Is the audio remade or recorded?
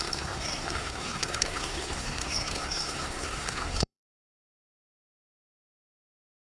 remade